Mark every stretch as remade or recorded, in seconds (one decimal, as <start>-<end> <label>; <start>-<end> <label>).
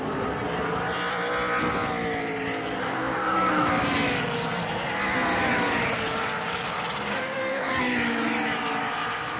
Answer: 0.0-2.8 recorded; 2.8-3.7 remade; 3.7-7.1 recorded; 7.1-7.8 remade; 7.8-9.4 recorded